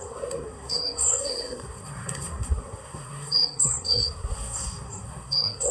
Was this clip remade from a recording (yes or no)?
yes